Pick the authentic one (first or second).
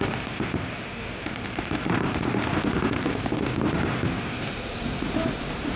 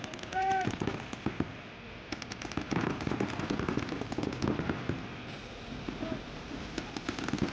second